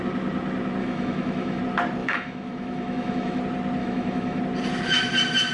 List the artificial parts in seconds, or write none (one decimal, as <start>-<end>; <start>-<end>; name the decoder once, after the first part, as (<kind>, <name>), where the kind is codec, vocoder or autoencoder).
0.8-1.6 (autoencoder, DAC-VAE); 2.0-3.4; 3.8-4.4

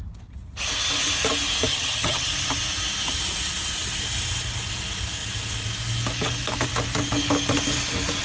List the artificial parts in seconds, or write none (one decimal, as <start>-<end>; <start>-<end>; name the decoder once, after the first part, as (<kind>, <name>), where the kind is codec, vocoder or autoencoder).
1.7-2.3 (vocoder, HiFi-GAN)

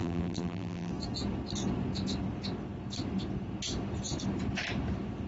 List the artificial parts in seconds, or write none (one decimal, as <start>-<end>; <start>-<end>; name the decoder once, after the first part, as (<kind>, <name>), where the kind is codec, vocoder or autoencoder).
0.0-0.9 (vocoder, BigVGAN v2)

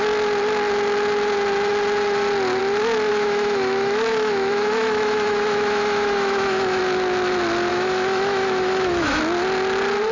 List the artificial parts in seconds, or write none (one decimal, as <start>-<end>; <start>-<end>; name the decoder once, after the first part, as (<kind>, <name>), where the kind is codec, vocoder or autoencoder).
3.1-6.8 (autoencoder, DAC-VAE); 7.7-9.2

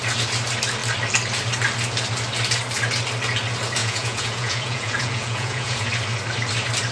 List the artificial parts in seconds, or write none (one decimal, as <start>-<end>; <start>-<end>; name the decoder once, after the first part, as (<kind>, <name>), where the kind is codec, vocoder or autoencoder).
3.8-5.9 (vocoder, Vocos)